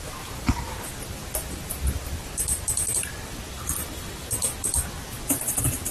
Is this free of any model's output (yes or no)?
no